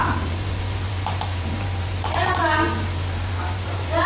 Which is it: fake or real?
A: fake